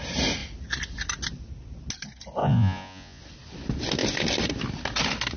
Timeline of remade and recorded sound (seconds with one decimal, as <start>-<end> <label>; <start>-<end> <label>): 0.0-2.4 recorded; 2.4-3.2 remade; 3.2-5.4 recorded